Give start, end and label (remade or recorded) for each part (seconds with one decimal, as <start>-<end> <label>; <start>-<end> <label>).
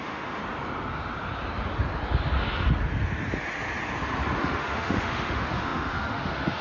0.0-0.4 remade; 0.4-4.4 recorded; 4.4-6.6 remade